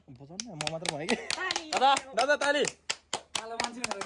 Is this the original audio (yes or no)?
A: yes